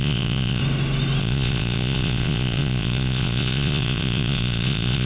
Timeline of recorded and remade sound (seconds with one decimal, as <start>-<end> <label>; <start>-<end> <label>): 0.0-0.6 remade; 0.6-1.2 recorded; 1.2-5.1 remade